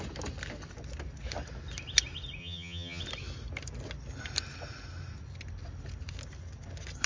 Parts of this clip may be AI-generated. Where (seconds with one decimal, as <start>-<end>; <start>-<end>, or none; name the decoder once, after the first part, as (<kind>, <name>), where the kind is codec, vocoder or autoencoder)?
2.4-3.0 (vocoder, HiFi-GAN)